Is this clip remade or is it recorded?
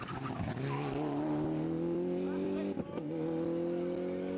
recorded